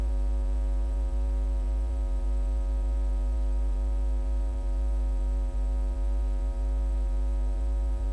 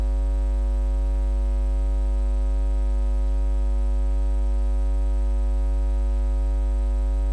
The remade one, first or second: first